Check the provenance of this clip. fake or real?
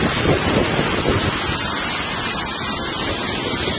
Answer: real